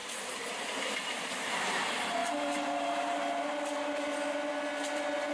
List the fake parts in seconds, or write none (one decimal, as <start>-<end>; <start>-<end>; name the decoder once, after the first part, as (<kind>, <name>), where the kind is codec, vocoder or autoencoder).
0.0-1.8 (vocoder, BigVGAN v2); 2.2-3.2